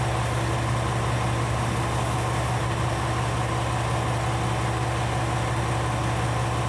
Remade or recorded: recorded